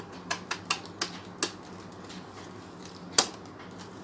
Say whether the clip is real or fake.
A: real